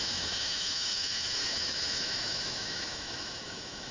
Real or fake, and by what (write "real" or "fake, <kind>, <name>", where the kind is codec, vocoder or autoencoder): fake, autoencoder, DAC-VAE